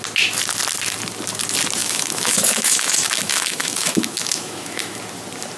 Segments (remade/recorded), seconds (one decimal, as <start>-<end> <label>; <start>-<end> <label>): 0.0-1.8 recorded; 1.8-5.0 remade; 5.0-5.6 recorded